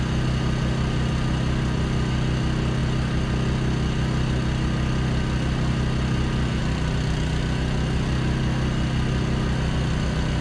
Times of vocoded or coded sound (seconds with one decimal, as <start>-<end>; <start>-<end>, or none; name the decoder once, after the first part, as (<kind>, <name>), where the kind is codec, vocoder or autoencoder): none